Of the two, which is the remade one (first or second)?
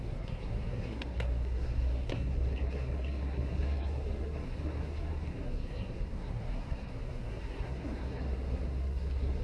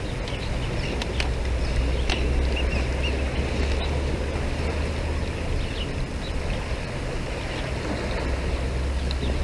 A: first